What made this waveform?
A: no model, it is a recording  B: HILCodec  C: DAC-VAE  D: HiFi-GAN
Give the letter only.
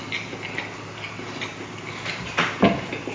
A